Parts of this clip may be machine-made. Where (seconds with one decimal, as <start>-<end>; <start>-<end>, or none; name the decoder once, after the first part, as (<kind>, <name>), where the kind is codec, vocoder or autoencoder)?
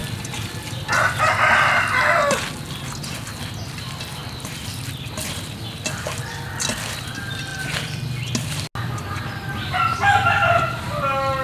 4.2-4.9 (vocoder, BigVGAN v2)